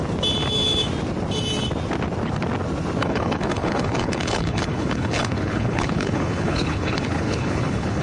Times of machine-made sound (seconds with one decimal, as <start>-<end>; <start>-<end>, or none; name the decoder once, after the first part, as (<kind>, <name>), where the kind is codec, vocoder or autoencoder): 3.0-8.0 (codec, HILCodec)